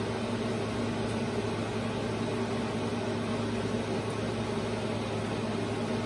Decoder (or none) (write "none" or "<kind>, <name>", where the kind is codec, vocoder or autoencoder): none